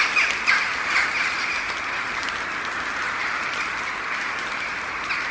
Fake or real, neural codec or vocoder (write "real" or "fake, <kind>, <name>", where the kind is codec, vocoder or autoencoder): real